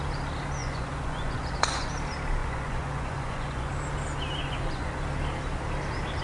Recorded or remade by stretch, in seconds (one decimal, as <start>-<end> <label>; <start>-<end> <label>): 0.0-0.6 recorded; 0.6-1.9 remade; 1.9-2.4 recorded; 2.4-3.7 remade; 3.7-4.4 recorded; 4.4-5.0 remade; 5.0-6.2 recorded